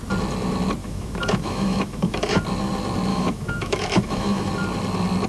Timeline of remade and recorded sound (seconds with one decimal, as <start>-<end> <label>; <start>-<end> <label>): 0.0-0.8 recorded; 0.8-2.4 remade; 2.4-3.1 recorded; 3.1-4.5 remade; 4.5-5.3 recorded